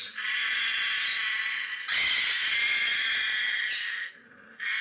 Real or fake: real